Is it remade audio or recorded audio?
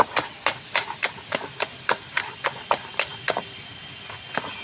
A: recorded